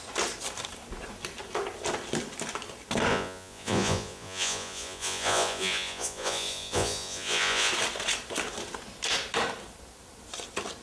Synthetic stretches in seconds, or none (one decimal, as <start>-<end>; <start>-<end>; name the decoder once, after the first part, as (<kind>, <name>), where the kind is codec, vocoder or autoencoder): 3.1-7.7 (vocoder, Vocos)